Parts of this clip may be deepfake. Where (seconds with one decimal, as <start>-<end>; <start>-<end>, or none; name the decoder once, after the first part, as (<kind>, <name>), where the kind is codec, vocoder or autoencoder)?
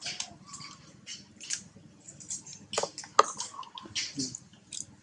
none